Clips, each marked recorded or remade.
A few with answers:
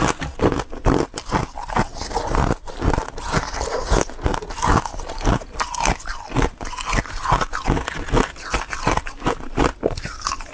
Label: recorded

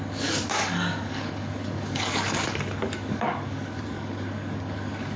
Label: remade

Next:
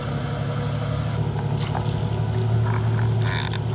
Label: recorded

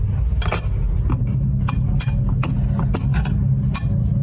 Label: recorded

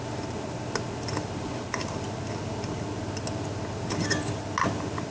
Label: recorded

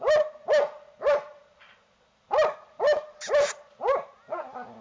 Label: recorded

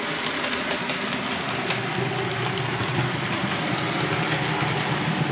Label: recorded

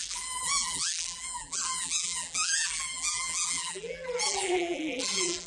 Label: remade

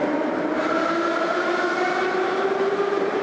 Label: remade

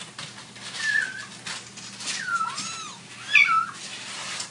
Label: recorded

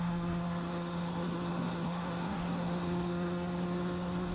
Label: remade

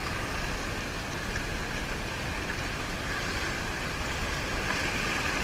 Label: recorded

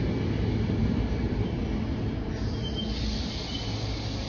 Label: recorded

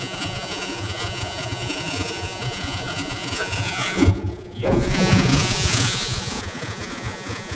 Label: remade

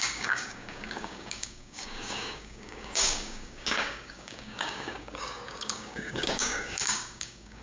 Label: remade